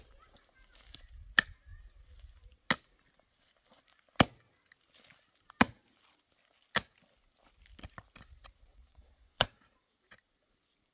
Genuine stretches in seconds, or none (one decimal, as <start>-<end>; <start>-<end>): 0.0-8.7; 10.0-10.9